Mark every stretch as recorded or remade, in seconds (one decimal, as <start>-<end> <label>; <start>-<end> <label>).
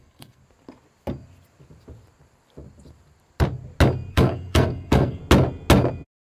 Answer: 0.0-0.4 remade; 0.4-4.1 recorded; 4.1-5.2 remade; 5.2-6.2 recorded